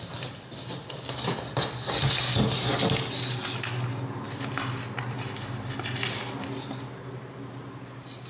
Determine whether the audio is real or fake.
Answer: real